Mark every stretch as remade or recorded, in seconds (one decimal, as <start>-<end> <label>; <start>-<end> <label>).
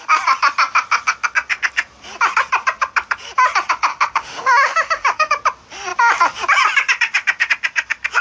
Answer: 0.0-3.9 recorded; 3.9-5.3 remade; 5.3-8.2 recorded